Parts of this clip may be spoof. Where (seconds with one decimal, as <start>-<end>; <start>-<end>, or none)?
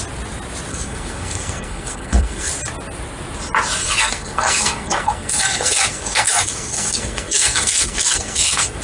0.7-2.5; 3.8-8.8